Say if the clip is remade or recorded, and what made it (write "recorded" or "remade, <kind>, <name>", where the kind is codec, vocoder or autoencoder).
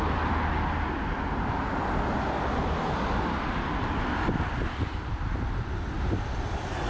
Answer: recorded